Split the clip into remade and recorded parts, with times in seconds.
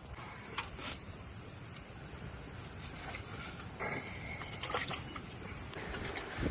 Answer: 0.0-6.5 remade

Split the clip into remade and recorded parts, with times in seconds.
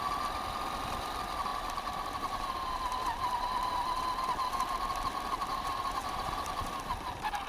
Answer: 0.0-1.5 recorded; 1.5-3.7 remade; 3.7-5.5 recorded; 5.5-6.7 remade; 6.7-7.5 recorded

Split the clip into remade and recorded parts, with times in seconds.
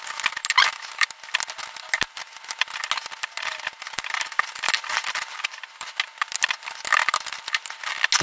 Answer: 0.0-8.2 recorded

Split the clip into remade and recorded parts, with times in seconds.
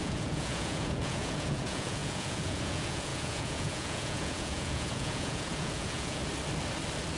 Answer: 0.0-6.2 remade; 6.2-7.2 recorded